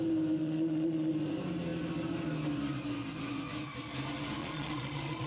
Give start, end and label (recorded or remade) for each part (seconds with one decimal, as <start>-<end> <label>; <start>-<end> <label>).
0.0-0.4 recorded; 0.4-1.1 remade; 1.1-4.4 recorded; 4.4-5.3 remade